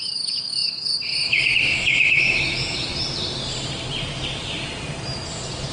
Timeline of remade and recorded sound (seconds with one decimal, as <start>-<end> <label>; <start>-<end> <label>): 0.0-2.9 remade; 2.9-5.7 recorded